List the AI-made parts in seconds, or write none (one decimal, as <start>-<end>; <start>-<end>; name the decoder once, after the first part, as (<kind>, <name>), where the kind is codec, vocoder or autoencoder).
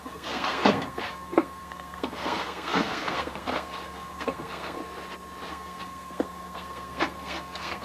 0.0-4.8 (codec, SNAC); 5.5-7.8